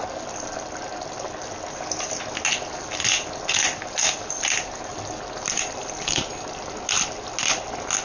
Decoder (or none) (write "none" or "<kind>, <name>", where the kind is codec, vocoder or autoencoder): none